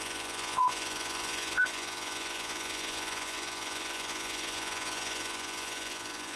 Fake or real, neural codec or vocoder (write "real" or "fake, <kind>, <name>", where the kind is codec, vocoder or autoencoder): fake, vocoder, Vocos